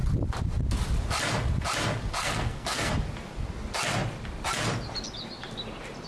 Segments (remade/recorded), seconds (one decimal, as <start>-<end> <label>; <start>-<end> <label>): 0.0-2.2 recorded; 2.2-2.9 remade; 2.9-6.1 recorded